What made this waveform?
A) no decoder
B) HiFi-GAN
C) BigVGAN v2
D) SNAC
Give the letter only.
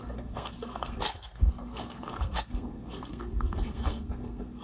D